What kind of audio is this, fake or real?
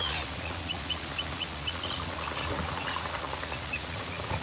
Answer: fake